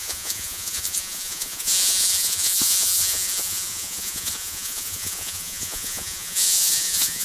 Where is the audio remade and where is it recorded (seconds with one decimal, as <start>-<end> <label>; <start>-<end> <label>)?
0.0-7.2 remade